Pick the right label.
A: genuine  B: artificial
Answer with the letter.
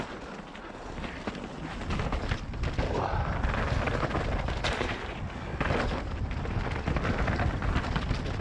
A